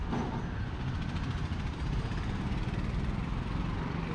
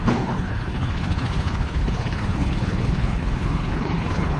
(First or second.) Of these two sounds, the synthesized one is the second